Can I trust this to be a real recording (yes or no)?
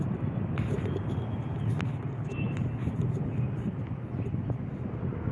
yes